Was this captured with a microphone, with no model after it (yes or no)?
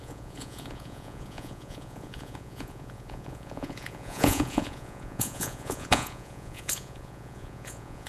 no